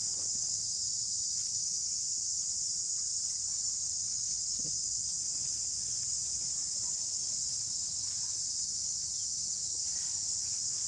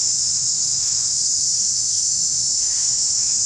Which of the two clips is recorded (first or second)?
first